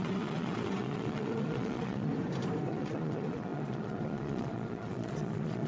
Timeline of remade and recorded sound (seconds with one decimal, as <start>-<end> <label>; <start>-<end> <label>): 0.0-2.1 remade; 2.1-2.7 recorded; 2.7-5.7 remade